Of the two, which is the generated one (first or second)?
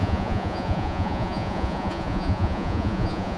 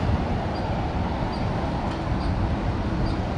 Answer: first